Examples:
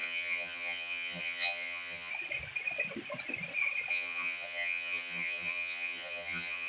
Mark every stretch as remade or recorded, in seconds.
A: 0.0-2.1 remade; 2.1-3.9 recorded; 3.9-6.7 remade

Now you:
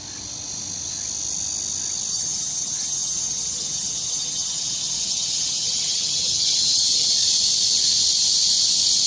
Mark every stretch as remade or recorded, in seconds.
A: 0.0-2.1 recorded; 2.1-7.1 remade; 7.1-9.1 recorded

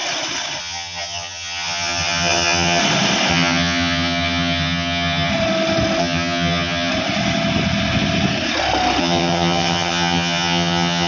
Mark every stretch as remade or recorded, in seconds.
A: 0.0-0.6 recorded; 0.6-2.8 remade; 2.8-3.3 recorded; 3.3-5.3 remade; 5.3-6.0 recorded; 6.0-6.9 remade; 6.9-9.0 recorded; 9.0-11.1 remade

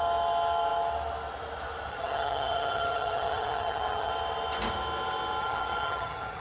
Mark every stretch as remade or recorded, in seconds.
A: 0.0-1.9 recorded; 1.9-4.1 remade; 4.1-5.4 recorded; 5.4-6.4 remade

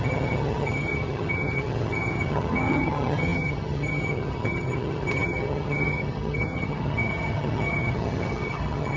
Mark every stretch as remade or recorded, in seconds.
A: 0.0-9.0 remade